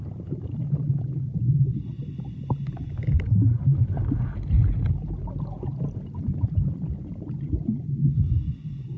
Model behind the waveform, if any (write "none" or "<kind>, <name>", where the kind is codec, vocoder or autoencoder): none